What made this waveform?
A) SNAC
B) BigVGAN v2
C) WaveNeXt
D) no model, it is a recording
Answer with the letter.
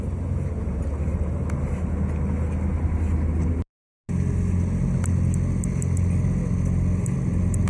D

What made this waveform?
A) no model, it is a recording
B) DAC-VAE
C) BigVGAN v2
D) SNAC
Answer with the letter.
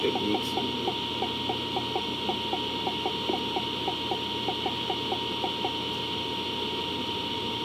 A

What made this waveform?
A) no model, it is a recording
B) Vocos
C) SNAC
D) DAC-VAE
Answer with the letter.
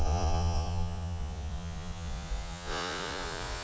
B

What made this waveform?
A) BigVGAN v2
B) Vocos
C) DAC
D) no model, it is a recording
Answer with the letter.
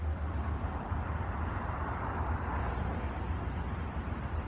D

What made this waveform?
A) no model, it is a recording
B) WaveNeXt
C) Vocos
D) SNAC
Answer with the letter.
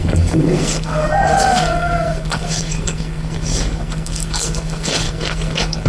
D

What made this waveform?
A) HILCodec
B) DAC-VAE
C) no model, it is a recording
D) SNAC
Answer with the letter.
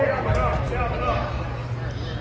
C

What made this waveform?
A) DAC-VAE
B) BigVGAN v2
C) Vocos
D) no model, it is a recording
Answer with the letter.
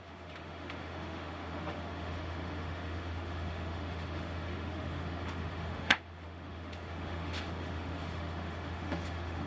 A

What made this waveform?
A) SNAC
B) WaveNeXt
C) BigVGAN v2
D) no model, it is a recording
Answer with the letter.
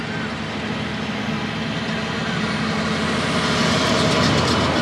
D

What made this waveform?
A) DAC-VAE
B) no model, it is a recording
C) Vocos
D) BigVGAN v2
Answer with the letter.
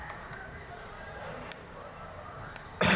D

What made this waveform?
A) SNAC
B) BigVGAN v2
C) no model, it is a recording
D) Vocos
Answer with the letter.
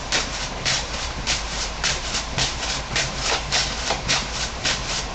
B